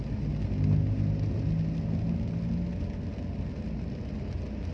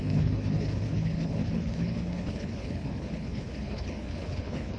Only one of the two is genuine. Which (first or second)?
first